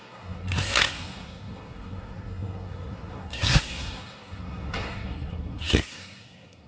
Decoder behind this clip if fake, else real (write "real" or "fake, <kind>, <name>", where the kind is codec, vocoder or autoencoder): fake, codec, SNAC